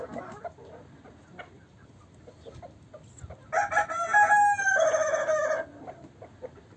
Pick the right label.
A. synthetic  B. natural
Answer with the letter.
B